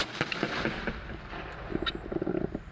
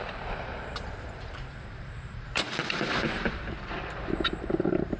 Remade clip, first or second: second